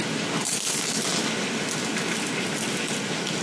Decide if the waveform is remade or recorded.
recorded